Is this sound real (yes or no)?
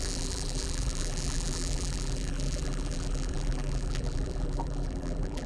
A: no